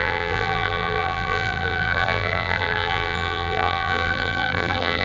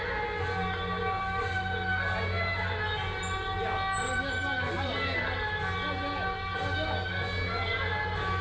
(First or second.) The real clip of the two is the second